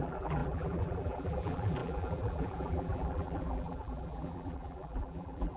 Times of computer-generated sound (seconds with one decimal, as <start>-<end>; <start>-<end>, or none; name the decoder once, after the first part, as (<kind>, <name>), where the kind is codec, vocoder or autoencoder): 0.0-5.6 (vocoder, BigVGAN v2)